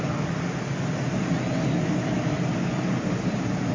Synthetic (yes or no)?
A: no